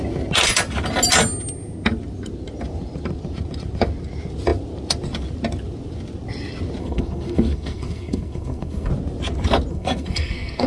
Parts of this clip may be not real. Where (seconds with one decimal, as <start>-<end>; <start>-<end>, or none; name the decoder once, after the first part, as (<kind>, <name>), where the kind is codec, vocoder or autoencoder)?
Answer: 6.8-8.9 (codec, SNAC); 9.7-10.7